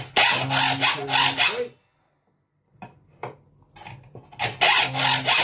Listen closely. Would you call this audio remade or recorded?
recorded